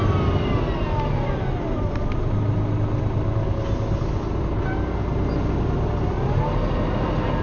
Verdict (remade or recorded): recorded